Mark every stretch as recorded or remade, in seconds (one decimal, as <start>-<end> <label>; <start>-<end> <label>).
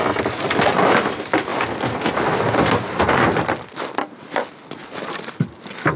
0.0-6.0 recorded